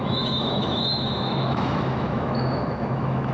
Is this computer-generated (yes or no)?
yes